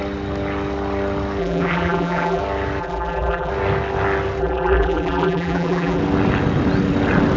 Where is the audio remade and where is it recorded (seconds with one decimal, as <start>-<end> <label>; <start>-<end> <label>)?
0.0-1.4 recorded; 1.4-2.4 remade; 2.4-2.8 recorded; 2.8-3.5 remade; 3.5-4.4 recorded; 4.4-6.0 remade; 6.0-7.4 recorded